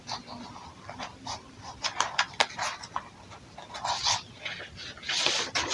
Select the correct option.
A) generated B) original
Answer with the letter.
B